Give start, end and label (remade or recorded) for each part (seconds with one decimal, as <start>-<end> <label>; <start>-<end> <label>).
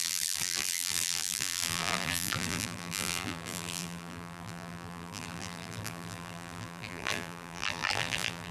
0.0-8.5 remade